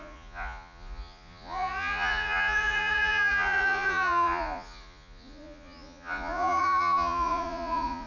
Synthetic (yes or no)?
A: yes